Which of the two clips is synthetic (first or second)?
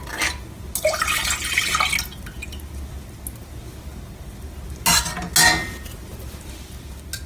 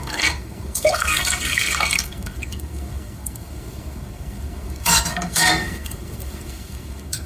second